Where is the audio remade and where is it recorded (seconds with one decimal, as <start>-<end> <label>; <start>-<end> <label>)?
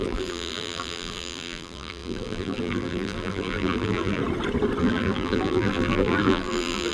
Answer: 0.0-4.2 remade; 4.2-4.8 recorded; 4.8-6.9 remade